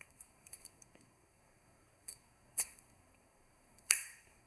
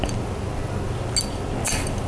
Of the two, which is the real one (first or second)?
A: second